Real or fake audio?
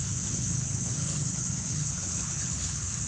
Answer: fake